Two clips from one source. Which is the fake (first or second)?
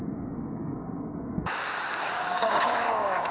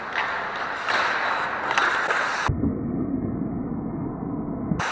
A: first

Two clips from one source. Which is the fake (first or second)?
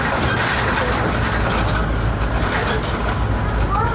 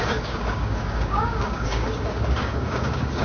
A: second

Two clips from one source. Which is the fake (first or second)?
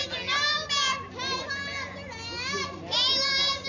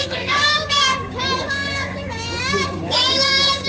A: second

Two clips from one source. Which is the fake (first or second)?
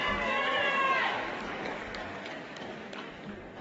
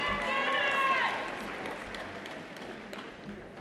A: first